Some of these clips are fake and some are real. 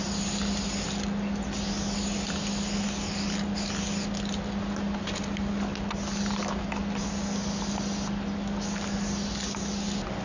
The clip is real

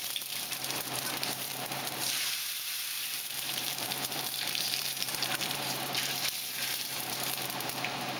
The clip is fake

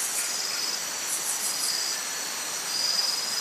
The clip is real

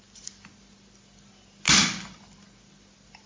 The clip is real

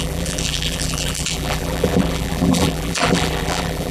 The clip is fake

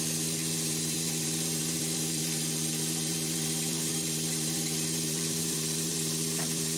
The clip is fake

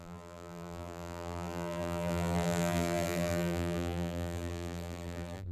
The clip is fake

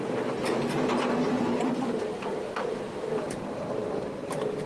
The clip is fake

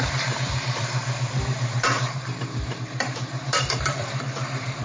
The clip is fake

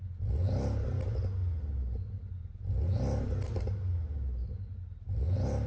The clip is real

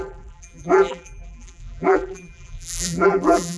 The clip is fake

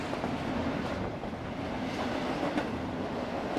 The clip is real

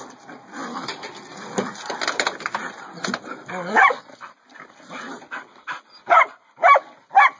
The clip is real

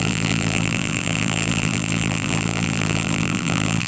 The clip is fake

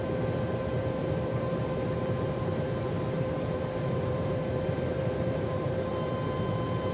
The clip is fake